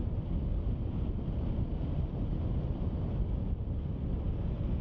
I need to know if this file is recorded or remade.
recorded